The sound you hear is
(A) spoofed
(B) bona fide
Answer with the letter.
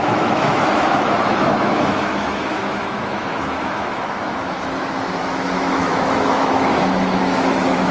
A